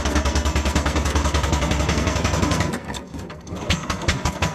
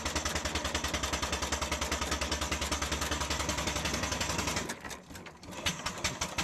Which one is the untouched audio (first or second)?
second